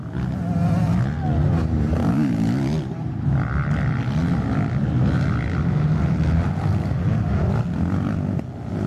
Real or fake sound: real